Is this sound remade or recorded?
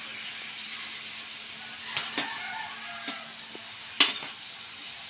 recorded